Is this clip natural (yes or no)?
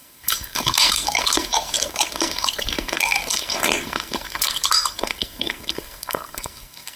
no